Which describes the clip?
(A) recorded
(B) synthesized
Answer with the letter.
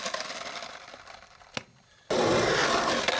A